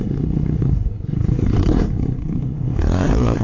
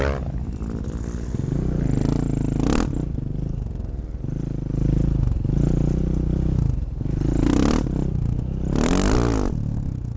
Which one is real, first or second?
second